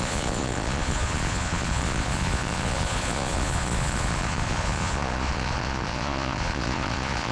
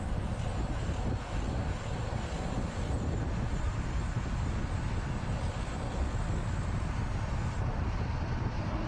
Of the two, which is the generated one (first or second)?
first